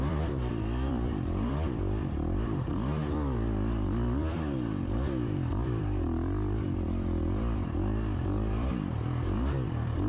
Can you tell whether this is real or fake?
fake